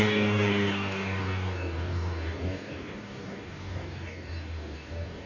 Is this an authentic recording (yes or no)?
no